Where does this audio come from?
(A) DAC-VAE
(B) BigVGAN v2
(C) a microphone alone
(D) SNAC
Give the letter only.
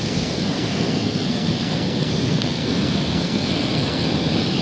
D